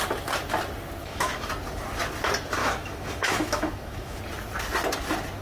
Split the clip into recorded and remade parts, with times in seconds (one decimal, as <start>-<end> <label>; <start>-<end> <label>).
0.0-1.0 recorded; 1.0-1.5 remade; 1.5-2.6 recorded; 2.6-4.2 remade; 4.2-5.4 recorded